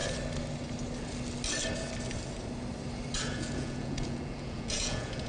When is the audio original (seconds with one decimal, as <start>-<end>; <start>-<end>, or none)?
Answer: 0.0-3.2